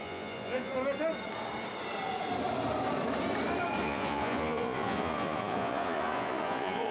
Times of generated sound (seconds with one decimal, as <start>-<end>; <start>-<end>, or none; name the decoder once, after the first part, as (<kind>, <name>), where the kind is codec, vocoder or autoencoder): 0.0-0.7 (vocoder, Vocos); 3.8-6.9